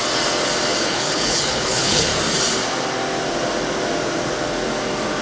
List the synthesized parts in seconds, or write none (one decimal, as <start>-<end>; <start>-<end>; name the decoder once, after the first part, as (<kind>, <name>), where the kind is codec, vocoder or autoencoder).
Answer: 0.8-2.1 (codec, HILCodec)